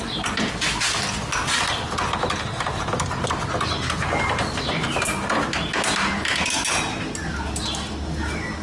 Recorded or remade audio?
recorded